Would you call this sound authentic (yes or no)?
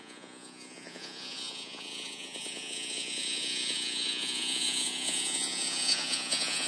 no